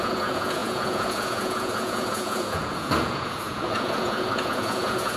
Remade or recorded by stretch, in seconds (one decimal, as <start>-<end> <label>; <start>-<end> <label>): 0.0-5.2 remade